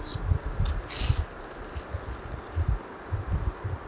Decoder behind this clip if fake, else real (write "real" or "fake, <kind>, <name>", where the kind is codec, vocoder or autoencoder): real